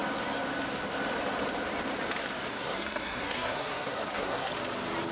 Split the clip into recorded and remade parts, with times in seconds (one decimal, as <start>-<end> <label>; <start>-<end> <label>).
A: 0.0-2.5 recorded; 2.5-4.5 remade; 4.5-5.1 recorded